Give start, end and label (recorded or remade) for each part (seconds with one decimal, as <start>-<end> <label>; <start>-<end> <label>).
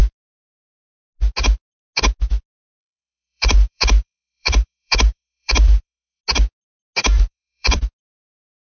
0.0-2.8 recorded; 2.8-6.2 remade; 6.2-7.0 recorded; 7.0-7.8 remade; 7.8-8.8 recorded